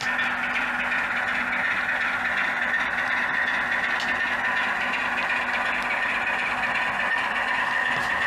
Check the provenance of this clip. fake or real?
real